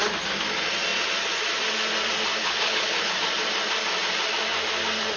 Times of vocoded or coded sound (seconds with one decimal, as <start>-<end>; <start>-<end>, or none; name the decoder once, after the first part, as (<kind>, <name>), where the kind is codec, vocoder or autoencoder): 2.4-3.1 (codec, HILCodec)